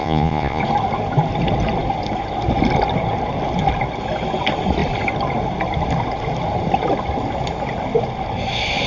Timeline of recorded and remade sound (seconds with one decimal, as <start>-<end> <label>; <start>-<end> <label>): 0.0-0.6 remade; 0.6-8.9 recorded